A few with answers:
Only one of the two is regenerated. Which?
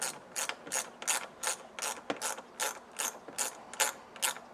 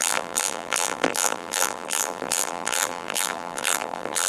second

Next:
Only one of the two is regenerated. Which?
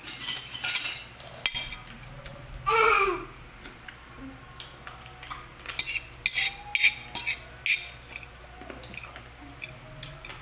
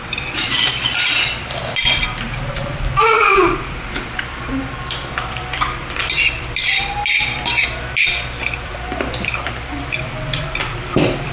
second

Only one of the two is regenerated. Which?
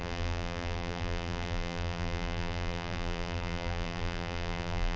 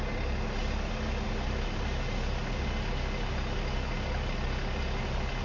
first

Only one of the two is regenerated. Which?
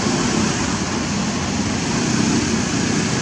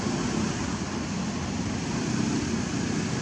second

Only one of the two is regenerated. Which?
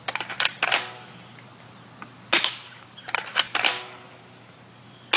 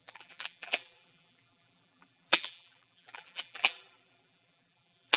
second